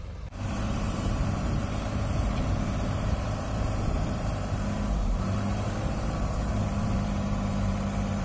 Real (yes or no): no